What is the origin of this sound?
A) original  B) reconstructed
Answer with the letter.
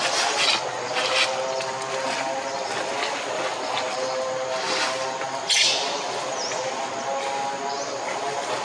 A